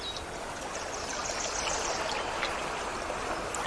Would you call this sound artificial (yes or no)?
no